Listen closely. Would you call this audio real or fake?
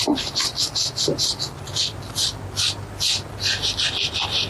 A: real